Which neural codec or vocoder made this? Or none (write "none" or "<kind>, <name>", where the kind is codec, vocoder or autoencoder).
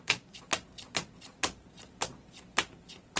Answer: none